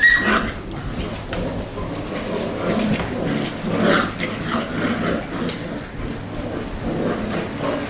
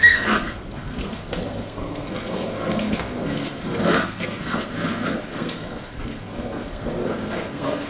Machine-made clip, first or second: second